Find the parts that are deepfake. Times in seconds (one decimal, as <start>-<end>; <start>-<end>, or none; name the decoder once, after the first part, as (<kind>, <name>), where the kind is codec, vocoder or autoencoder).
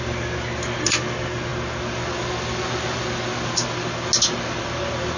none